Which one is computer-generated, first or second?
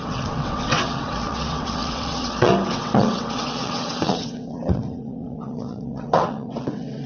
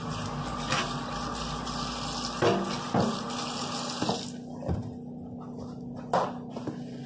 first